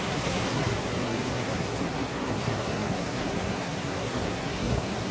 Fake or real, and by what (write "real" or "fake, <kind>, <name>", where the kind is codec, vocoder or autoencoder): fake, codec, SNAC